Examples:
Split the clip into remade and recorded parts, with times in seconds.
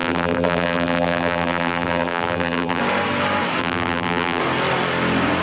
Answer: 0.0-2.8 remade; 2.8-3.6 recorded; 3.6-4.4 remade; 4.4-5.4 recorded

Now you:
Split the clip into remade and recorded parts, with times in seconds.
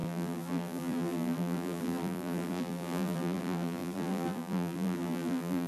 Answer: 0.0-5.7 remade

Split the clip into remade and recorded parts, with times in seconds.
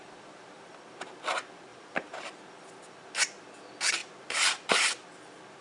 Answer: 0.0-0.7 remade; 0.7-1.7 recorded; 1.7-2.4 remade; 2.4-4.0 recorded; 4.0-5.6 remade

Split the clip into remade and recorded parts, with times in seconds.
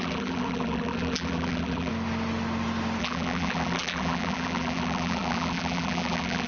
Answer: 0.0-1.9 remade; 1.9-3.0 recorded; 3.0-6.5 remade